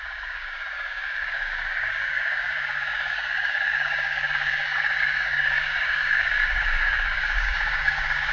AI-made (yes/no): yes